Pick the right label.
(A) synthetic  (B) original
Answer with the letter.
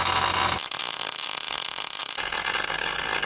B